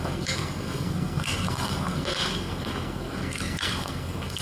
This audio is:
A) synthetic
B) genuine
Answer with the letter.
A